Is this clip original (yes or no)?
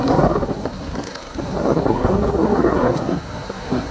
no